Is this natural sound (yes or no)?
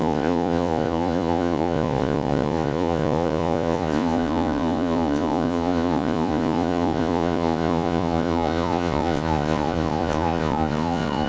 no